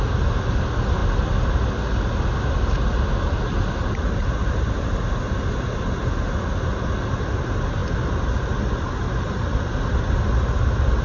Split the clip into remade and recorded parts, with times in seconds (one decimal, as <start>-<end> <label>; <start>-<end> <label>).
0.0-11.0 recorded